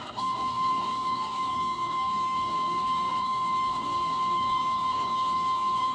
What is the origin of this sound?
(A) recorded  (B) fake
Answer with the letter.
B